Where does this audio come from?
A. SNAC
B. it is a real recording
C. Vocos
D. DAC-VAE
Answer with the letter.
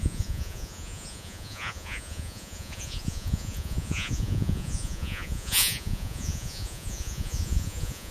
C